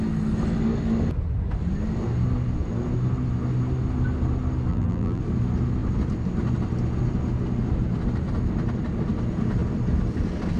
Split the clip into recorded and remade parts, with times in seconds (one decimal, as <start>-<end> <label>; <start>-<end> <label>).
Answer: 0.0-4.7 recorded; 4.7-5.2 remade; 5.2-10.6 recorded

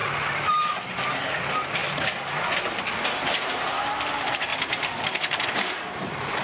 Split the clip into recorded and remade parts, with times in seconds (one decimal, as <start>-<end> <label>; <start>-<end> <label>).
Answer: 0.0-0.5 recorded; 0.5-1.8 remade; 1.8-3.1 recorded; 3.1-4.5 remade; 4.5-5.1 recorded; 5.1-6.4 remade

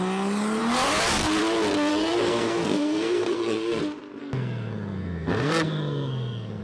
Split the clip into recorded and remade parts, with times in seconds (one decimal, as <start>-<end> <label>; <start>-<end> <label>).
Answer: 0.0-1.9 recorded; 1.9-3.8 remade; 3.8-4.2 recorded; 4.2-6.6 remade

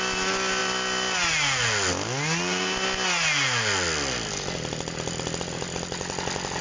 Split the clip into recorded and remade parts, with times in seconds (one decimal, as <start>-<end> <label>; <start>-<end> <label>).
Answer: 0.0-6.6 recorded

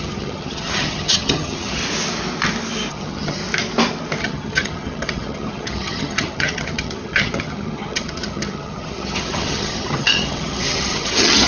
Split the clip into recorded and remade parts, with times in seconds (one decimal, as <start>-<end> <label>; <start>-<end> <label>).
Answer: 0.0-1.8 remade; 1.8-2.9 recorded; 2.9-3.4 remade; 3.4-4.2 recorded; 4.2-11.5 remade

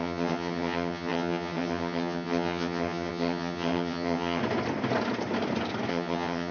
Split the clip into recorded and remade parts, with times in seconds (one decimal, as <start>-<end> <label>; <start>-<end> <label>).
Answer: 0.0-4.4 remade; 4.4-5.9 recorded; 5.9-6.5 remade